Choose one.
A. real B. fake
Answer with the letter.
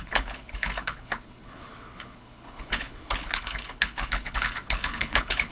B